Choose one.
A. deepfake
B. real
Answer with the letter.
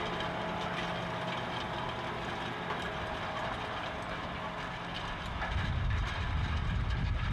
B